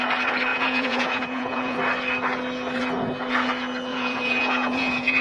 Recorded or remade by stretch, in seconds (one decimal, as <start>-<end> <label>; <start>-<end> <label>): 0.0-0.5 recorded; 0.5-1.8 remade; 1.8-3.9 recorded; 3.9-5.2 remade